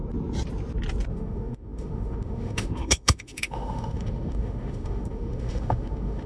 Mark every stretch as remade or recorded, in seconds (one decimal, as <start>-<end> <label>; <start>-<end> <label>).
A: 0.0-1.1 recorded; 1.1-6.3 remade